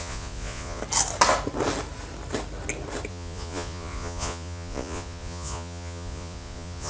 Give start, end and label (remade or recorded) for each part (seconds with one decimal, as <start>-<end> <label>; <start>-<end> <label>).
0.0-0.8 remade; 0.8-3.1 recorded; 3.1-6.9 remade

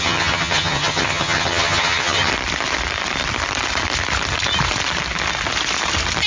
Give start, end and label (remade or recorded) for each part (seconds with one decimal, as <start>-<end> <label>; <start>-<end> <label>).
0.0-2.3 remade; 2.3-6.3 recorded

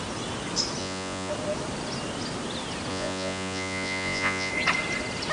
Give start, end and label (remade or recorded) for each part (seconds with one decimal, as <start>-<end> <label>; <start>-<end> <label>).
0.0-0.8 recorded; 0.8-1.3 remade; 1.3-2.9 recorded; 2.9-4.5 remade; 4.5-5.3 recorded